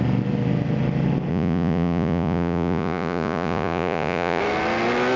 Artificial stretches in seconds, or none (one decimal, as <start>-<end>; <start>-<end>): 1.3-4.4